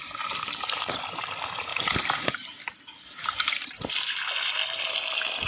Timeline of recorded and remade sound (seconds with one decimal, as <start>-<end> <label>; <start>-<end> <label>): 0.0-5.5 recorded